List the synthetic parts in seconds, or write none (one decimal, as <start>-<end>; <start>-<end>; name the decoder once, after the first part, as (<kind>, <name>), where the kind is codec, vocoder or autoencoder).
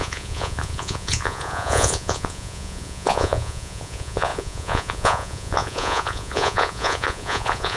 0.0-7.8 (vocoder, Vocos)